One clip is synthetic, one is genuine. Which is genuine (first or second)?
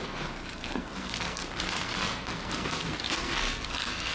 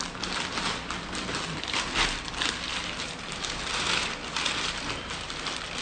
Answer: second